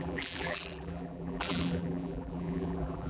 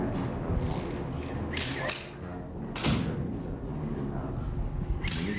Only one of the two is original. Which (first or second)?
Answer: second